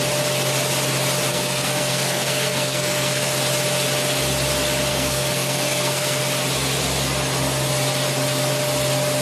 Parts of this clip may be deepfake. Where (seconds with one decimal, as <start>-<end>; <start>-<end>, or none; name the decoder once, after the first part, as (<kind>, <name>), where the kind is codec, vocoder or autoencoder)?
1.3-3.3 (codec, SNAC); 4.9-6.2